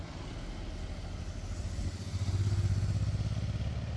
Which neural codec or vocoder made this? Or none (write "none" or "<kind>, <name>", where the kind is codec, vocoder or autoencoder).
none